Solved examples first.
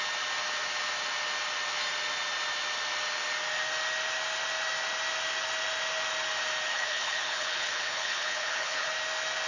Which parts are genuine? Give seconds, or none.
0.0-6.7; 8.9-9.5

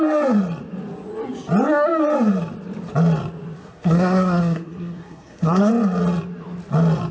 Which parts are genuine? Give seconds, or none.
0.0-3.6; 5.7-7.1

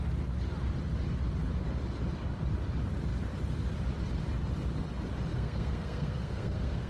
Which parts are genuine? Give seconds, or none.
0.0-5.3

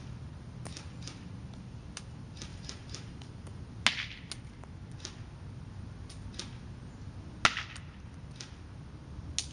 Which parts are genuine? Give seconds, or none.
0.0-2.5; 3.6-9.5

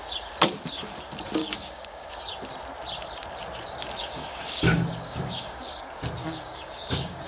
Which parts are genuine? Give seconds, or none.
0.0-1.4; 2.1-4.0; 5.7-6.2

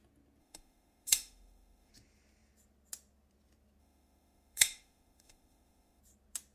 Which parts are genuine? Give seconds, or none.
0.0-0.4; 1.9-3.8; 6.0-6.5

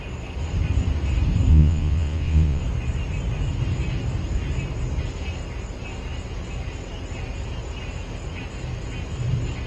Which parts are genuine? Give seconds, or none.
0.0-1.5; 2.6-9.7